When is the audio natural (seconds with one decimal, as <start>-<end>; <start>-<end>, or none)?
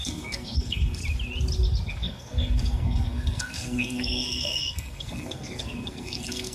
1.0-1.9